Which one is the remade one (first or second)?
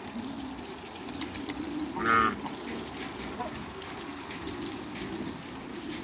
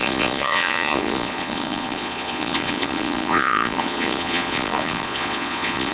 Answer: second